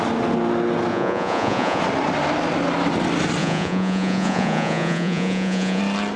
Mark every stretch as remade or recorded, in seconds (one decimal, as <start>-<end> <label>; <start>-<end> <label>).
0.0-0.9 recorded; 0.9-1.8 remade; 1.8-3.4 recorded; 3.4-5.8 remade; 5.8-6.2 recorded